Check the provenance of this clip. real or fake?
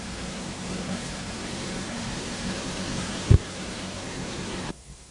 fake